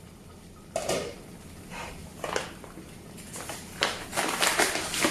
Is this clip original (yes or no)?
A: no